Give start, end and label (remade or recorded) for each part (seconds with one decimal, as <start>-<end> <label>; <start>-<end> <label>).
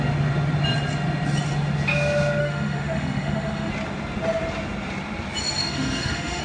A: 0.0-2.4 recorded; 2.4-3.7 remade; 3.7-5.6 recorded; 5.6-6.4 remade